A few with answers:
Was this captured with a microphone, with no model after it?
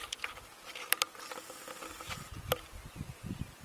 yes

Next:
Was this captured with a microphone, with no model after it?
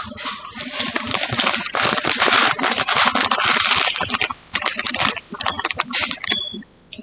yes